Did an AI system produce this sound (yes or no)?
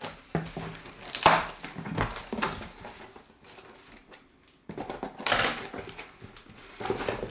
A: no